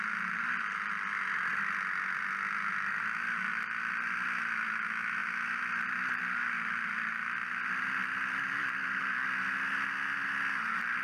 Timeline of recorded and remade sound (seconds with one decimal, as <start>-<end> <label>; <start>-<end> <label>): 0.0-11.0 recorded